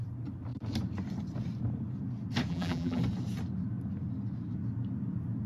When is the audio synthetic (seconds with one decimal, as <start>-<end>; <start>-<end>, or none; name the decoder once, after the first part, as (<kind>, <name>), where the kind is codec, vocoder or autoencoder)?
2.5-3.0 (vocoder, BigVGAN v2)